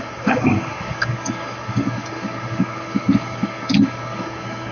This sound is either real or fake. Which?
fake